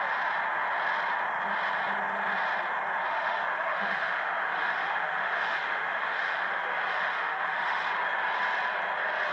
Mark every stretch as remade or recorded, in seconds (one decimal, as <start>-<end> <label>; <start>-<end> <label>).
0.0-3.1 recorded; 3.1-7.9 remade; 7.9-9.3 recorded